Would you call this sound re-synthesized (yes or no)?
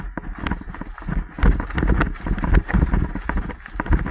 no